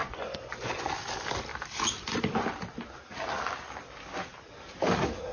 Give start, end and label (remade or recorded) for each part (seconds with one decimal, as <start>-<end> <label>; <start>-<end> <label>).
0.0-0.9 remade; 0.9-5.3 recorded

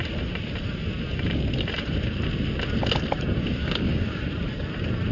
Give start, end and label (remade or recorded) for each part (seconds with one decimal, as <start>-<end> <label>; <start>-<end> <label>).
0.0-3.6 recorded; 3.6-4.2 remade; 4.2-5.1 recorded

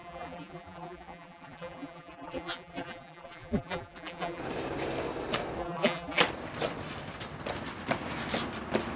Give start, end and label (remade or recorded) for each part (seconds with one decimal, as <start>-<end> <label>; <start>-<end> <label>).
0.0-4.4 remade; 4.4-5.6 recorded; 5.6-6.2 remade; 6.2-9.0 recorded